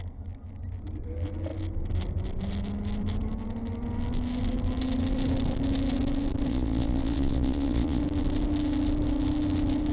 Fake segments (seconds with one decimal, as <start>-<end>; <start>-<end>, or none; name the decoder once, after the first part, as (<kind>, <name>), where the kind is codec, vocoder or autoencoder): 6.5-8.0 (vocoder, Vocos)